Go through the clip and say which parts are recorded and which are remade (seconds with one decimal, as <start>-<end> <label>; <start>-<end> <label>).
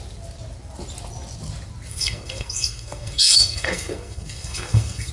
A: 0.0-1.9 recorded; 1.9-5.1 remade